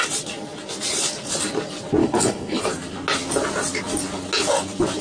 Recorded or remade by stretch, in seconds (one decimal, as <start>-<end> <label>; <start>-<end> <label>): 0.0-2.0 recorded; 2.0-2.6 remade; 2.6-5.0 recorded